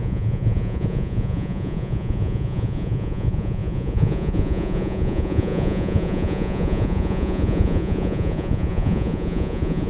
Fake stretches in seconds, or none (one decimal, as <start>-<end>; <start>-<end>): 0.0-9.9